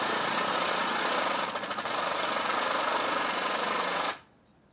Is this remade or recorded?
remade